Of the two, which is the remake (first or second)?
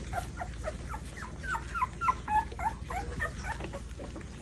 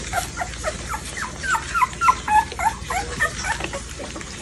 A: second